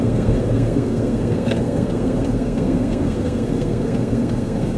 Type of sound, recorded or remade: remade